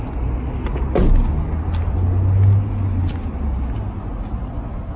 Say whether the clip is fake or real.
real